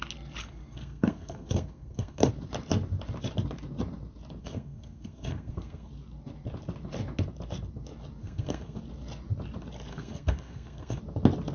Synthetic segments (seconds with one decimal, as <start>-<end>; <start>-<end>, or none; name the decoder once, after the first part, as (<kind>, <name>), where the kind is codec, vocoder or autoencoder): 0.4-2.3 (codec, SNAC); 4.4-5.9; 8.2-8.8; 9.9-11.0